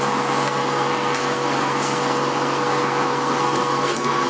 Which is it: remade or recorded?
remade